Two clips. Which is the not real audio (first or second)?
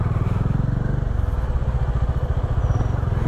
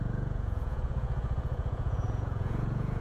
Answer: second